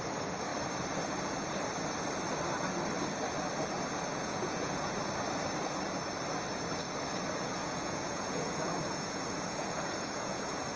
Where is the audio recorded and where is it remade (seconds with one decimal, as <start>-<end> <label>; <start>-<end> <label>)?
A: 0.0-4.1 recorded; 4.1-4.9 remade; 4.9-7.6 recorded; 7.6-10.8 remade